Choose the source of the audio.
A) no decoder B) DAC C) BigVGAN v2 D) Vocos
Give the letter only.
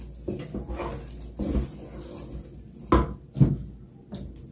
A